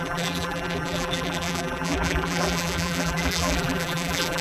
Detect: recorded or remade remade